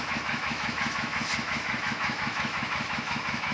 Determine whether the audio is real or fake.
fake